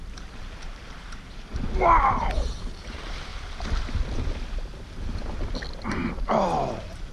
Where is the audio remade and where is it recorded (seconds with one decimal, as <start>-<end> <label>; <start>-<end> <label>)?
0.0-3.3 remade; 3.3-5.9 recorded; 5.9-7.1 remade